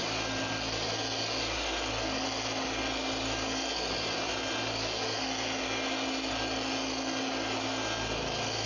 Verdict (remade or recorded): recorded